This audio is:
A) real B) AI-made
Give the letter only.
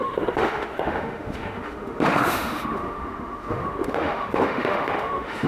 B